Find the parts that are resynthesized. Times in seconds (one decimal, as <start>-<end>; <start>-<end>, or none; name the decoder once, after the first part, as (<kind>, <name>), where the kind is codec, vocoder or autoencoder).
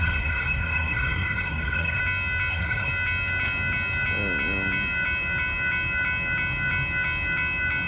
0.0-2.0 (codec, SNAC); 2.5-2.9